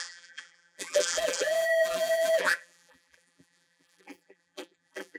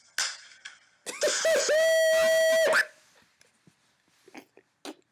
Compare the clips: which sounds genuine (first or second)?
second